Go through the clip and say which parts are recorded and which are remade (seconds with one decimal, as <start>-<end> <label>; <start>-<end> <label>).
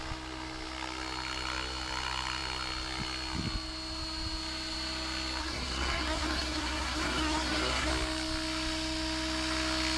0.0-5.4 recorded; 5.4-7.9 remade; 7.9-10.0 recorded